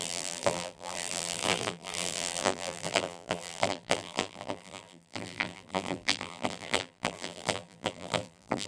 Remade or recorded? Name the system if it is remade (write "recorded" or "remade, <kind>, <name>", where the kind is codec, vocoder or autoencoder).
remade, vocoder, BigVGAN v2